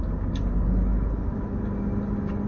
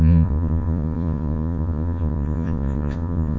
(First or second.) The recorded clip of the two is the first